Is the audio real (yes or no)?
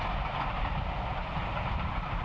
yes